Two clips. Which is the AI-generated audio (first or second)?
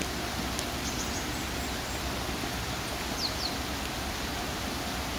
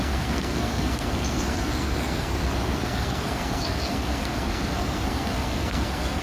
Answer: second